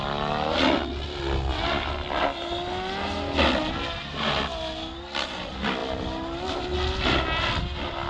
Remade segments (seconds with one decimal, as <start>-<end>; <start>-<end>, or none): none